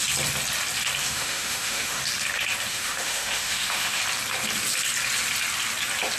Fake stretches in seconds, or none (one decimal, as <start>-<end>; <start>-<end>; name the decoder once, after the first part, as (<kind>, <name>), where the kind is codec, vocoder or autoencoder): 1.0-2.0 (autoencoder, DAC-VAE); 2.7-4.0